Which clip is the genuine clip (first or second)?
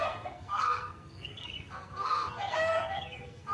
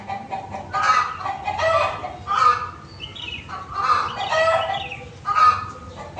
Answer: second